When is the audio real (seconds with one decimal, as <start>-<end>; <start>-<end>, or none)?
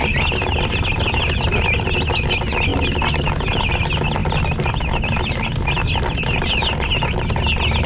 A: 0.0-7.9